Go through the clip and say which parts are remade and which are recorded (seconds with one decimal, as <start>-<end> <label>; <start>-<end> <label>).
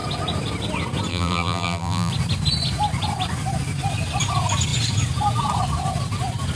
0.0-1.1 recorded; 1.1-2.1 remade; 2.1-6.6 recorded